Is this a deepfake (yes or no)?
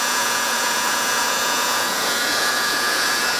yes